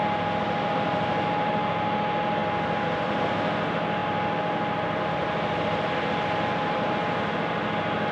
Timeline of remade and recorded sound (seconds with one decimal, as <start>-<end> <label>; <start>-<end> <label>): 0.0-8.1 recorded